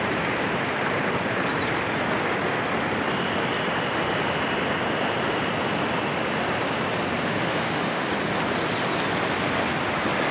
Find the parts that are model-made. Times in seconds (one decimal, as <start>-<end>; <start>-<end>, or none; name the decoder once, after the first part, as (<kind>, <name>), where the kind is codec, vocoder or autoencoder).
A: 7.3-8.1 (autoencoder, DAC-VAE)